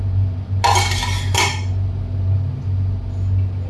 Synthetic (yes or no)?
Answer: no